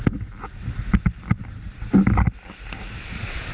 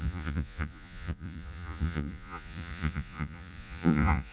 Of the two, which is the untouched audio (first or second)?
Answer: first